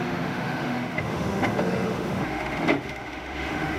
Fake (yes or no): yes